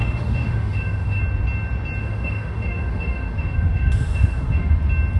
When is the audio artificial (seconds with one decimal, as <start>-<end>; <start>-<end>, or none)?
0.0-1.2; 2.0-4.8